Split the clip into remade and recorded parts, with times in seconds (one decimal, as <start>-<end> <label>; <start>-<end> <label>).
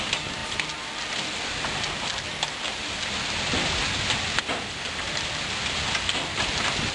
0.0-6.9 recorded